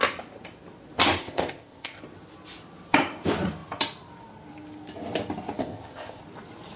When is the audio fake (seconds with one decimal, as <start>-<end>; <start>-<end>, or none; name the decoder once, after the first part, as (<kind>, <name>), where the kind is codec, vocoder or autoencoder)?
1.2-2.0 (codec, ZipCodec); 5.6-6.2